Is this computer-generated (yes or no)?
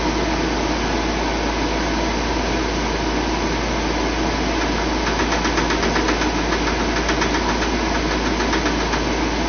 no